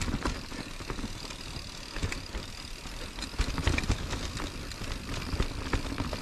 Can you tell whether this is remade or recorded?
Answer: recorded